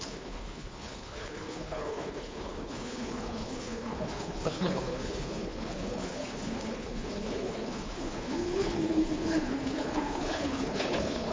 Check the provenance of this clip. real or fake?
fake